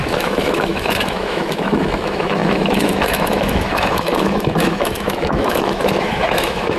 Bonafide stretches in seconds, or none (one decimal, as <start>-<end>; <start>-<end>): none